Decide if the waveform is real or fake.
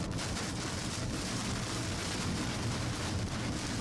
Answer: real